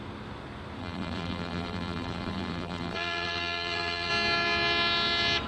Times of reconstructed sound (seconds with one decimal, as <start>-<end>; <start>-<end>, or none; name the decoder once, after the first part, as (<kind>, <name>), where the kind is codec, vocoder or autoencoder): 0.8-4.1 (vocoder, BigVGAN v2)